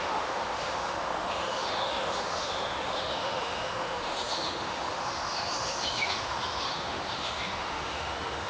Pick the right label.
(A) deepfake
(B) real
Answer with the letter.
A